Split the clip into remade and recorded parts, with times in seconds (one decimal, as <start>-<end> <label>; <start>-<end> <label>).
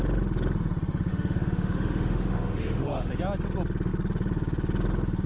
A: 0.0-1.1 recorded; 1.1-3.1 remade; 3.1-5.3 recorded